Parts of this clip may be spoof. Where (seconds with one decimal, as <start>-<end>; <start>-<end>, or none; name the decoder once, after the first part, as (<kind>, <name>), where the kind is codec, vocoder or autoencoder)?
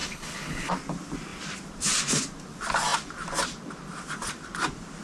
0.0-0.7 (codec, HILCodec)